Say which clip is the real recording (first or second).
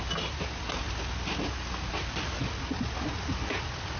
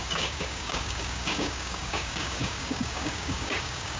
first